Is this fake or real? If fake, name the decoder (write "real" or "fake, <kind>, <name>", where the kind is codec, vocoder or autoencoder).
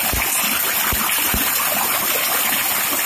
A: real